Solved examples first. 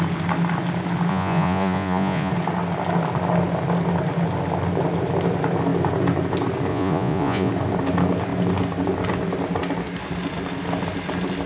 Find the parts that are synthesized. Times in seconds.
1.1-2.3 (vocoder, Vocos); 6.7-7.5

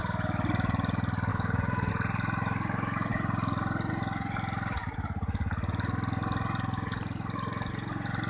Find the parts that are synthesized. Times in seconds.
1.3-1.9 (codec, DAC)